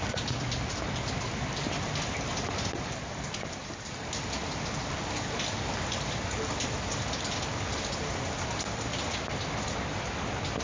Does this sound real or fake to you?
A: real